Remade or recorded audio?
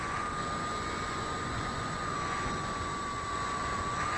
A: remade